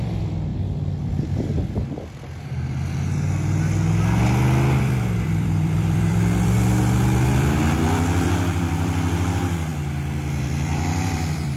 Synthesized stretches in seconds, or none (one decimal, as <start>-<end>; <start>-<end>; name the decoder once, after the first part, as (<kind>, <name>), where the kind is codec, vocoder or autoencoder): 0.0-0.5 (vocoder, BigVGAN v2); 4.8-9.7; 10.4-11.6